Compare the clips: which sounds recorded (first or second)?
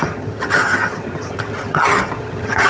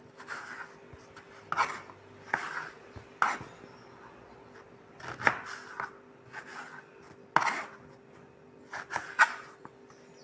second